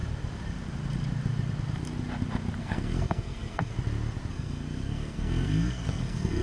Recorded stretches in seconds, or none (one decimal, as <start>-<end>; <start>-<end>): 0.0-2.6; 3.7-4.3

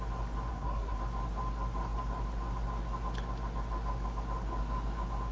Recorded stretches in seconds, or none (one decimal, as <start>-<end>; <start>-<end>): 0.0-0.5; 1.0-5.3

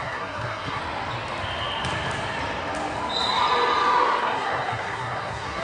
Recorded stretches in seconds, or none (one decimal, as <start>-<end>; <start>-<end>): 0.8-4.2

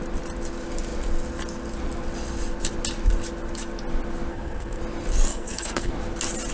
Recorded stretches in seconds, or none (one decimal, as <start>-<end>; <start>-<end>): 0.0-4.3; 4.8-5.3; 5.9-6.5

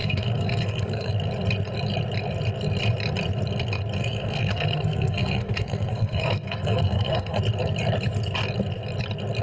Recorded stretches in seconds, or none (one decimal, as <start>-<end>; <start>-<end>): 1.1-4.0; 7.4-9.4